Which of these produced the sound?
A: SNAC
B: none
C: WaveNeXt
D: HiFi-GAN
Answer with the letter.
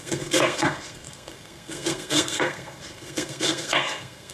A